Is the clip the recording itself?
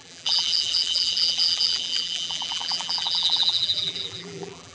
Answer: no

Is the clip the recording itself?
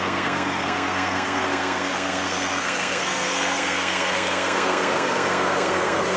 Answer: no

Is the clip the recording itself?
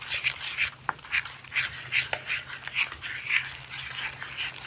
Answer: yes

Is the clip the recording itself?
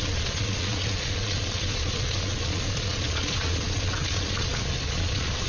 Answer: no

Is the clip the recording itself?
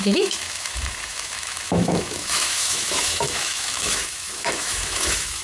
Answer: no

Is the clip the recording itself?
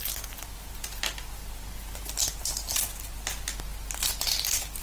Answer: yes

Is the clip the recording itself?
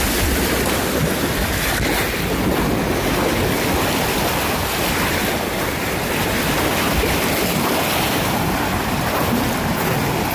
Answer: yes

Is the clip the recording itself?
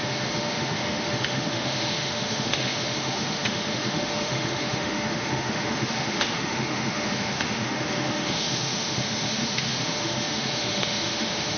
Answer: no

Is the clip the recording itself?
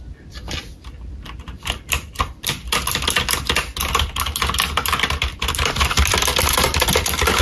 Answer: no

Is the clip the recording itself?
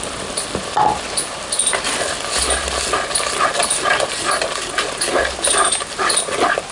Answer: yes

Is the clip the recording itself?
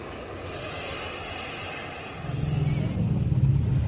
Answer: yes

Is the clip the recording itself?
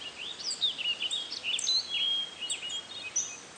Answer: yes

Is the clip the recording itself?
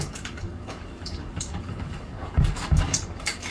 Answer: no